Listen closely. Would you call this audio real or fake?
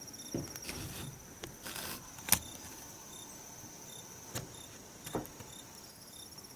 real